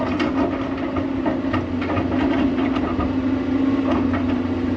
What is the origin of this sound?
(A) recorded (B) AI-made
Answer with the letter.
A